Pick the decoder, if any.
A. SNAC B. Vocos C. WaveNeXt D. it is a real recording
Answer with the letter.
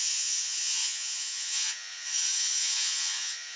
B